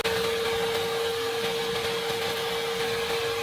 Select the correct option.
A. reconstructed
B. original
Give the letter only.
B